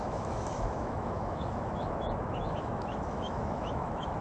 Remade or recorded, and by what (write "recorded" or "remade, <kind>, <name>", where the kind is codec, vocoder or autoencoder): remade, autoencoder, DAC-VAE